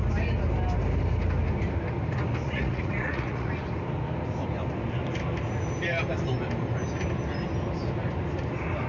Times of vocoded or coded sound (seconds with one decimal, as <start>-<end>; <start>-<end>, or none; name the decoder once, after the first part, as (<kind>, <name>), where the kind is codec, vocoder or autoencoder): 2.4-3.6 (vocoder, Vocos)